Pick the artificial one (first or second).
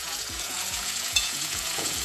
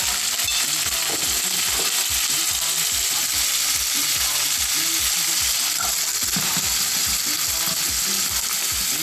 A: first